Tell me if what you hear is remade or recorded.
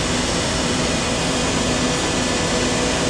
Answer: recorded